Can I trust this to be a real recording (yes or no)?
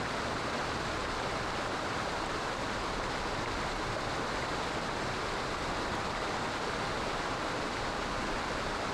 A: yes